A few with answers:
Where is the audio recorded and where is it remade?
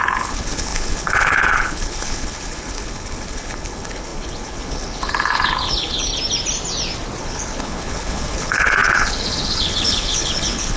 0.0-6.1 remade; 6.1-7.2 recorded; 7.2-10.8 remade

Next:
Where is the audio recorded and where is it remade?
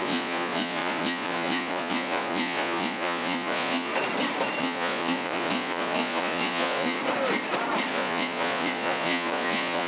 0.0-3.9 remade; 3.9-4.6 recorded; 4.6-7.0 remade; 7.0-7.9 recorded; 7.9-9.9 remade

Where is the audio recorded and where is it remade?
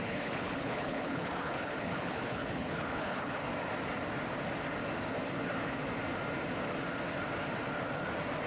0.0-3.4 remade; 3.4-8.5 recorded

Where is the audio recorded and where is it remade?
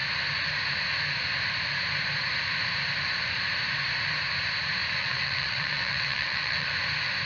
0.0-5.0 recorded; 5.0-6.7 remade; 6.7-7.2 recorded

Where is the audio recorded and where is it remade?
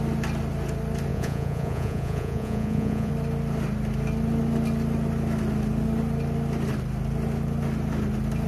0.0-1.1 recorded; 1.1-3.1 remade; 3.1-8.5 recorded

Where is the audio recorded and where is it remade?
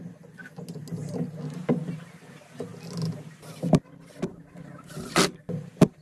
0.0-0.4 remade; 0.4-1.7 recorded; 1.7-2.7 remade; 2.7-3.3 recorded; 3.3-4.3 remade; 4.3-5.0 recorded; 5.0-6.0 remade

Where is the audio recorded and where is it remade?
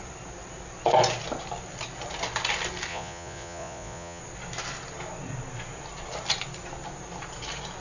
0.0-2.9 recorded; 2.9-4.2 remade; 4.2-7.8 recorded